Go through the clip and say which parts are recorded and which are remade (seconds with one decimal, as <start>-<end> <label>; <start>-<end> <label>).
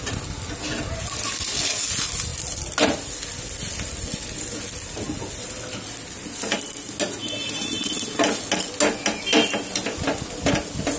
0.0-7.2 recorded; 7.2-7.9 remade; 7.9-11.0 recorded